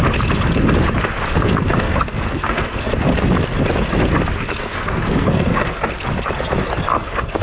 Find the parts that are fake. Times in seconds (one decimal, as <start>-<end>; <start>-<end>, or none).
1.3-2.9; 4.6-5.8; 6.9-7.4